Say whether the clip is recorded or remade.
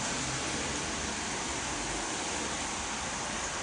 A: recorded